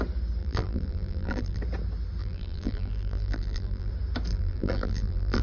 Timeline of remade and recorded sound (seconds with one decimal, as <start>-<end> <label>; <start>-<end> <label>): 0.0-0.4 recorded; 0.4-1.6 remade; 1.6-2.2 recorded; 2.2-3.9 remade; 3.9-4.3 recorded; 4.3-5.4 remade